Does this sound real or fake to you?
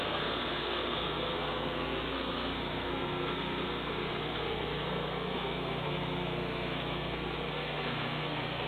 fake